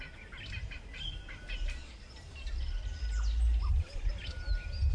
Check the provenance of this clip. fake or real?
real